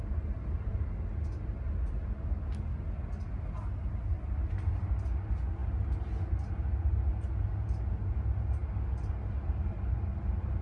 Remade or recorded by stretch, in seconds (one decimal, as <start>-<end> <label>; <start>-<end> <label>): 0.0-10.6 recorded